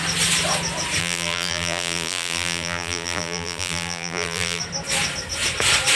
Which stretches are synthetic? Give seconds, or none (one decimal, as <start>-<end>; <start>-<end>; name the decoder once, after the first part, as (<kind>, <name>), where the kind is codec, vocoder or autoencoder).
1.0-4.6 (vocoder, BigVGAN v2)